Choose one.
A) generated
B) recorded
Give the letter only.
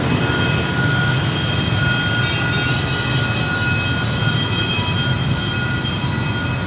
B